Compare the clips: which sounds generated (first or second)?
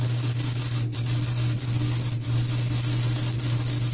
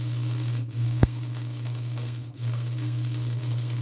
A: second